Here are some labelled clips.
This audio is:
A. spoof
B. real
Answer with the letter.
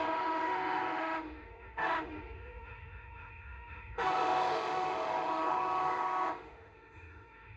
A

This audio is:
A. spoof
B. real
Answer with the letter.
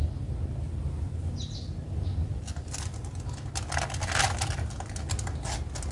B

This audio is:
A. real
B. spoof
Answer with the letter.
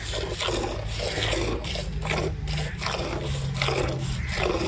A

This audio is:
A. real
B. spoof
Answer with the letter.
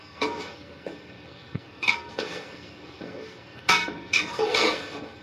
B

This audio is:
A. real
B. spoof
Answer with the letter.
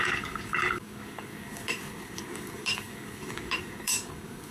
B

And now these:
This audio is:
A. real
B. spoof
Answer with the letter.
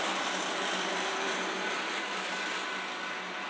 B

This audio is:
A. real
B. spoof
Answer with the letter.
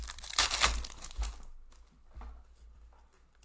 A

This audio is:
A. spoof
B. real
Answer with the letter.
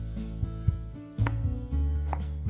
A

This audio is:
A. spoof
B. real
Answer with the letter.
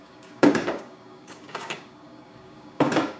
A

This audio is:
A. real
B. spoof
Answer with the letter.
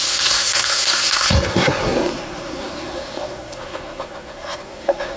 B